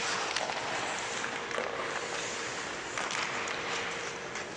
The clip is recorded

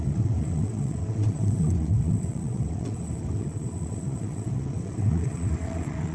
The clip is remade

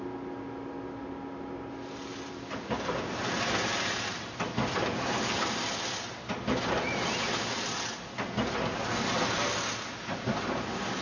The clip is recorded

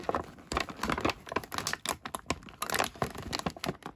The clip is recorded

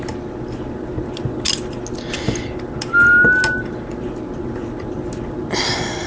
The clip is recorded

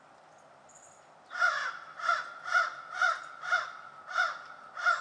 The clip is recorded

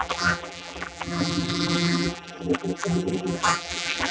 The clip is remade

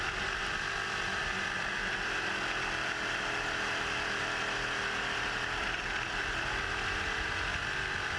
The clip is recorded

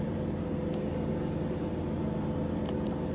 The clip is remade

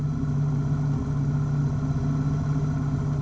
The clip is recorded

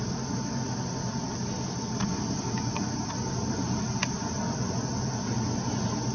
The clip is recorded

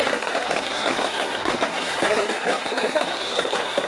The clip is remade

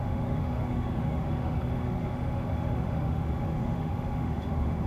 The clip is remade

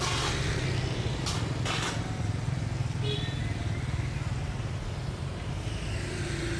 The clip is recorded